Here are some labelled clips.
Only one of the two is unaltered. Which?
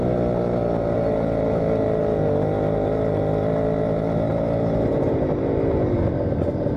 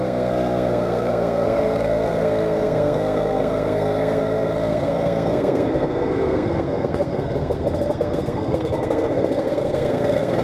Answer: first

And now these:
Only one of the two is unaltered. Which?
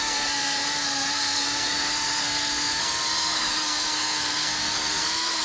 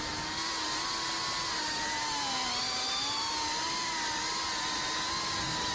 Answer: second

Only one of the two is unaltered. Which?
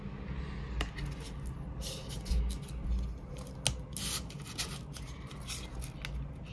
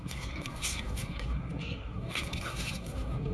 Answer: first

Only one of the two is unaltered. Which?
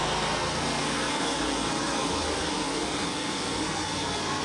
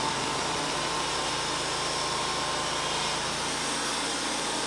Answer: second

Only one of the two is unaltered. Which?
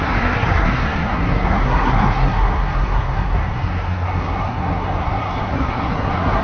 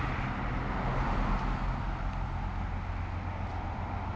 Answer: second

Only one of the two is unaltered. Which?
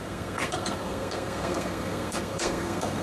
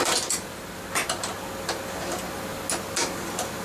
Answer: second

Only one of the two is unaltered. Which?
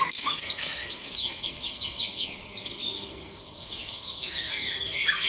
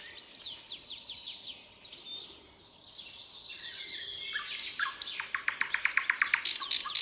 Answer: second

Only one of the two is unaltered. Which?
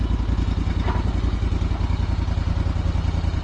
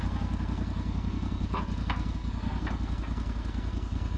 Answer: first